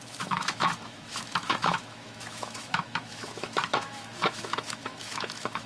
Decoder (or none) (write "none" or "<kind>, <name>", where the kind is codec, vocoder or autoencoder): autoencoder, DAC-VAE